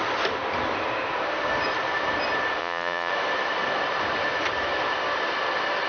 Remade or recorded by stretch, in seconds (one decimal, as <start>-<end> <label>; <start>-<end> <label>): 0.0-2.6 recorded; 2.6-3.1 remade; 3.1-5.9 recorded